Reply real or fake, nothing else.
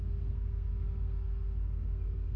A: fake